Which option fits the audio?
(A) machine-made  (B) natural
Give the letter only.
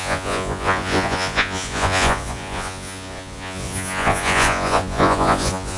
A